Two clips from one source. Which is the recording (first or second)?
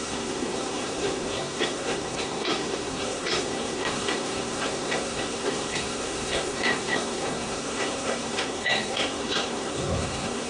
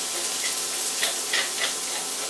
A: second